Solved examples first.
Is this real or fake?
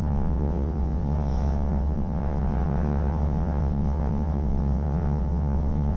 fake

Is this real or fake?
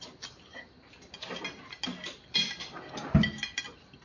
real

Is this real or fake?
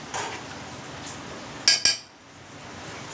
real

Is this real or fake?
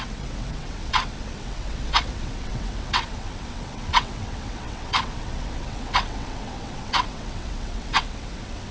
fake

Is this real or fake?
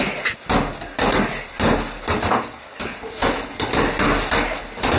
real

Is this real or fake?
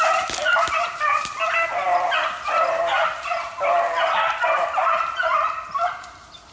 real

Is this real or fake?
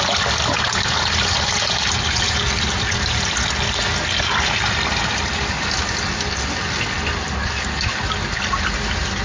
real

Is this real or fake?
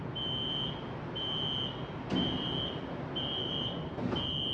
real